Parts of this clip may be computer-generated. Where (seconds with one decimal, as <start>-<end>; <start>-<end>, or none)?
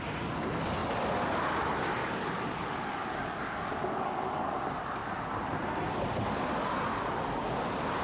2.0-4.5